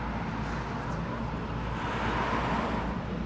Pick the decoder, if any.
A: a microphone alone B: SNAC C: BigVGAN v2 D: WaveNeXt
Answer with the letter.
A